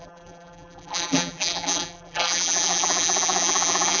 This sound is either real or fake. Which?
fake